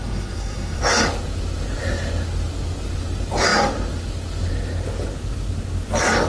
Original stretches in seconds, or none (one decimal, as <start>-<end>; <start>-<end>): 0.8-6.3